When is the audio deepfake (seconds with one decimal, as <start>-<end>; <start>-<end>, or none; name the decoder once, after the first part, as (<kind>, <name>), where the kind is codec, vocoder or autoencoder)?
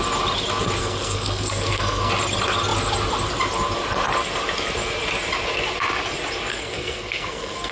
0.8-2.1 (codec, SNAC); 6.5-7.7